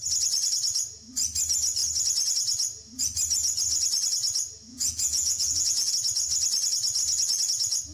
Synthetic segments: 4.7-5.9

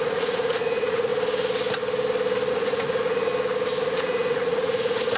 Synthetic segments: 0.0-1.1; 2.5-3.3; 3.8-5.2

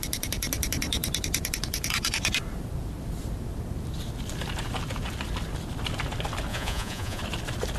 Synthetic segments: 6.5-7.2

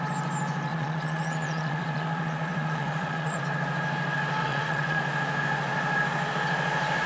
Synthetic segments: 0.7-3.4; 4.4-5.0

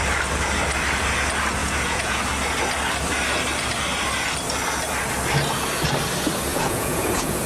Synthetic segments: 1.6-2.2; 6.5-7.5

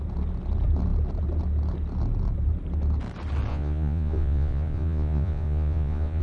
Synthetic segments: 3.5-6.2

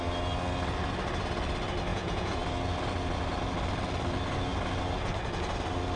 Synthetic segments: 1.9-2.4

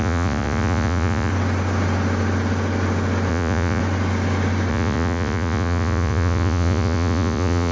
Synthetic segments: 0.0-1.3; 3.3-3.8; 4.7-7.7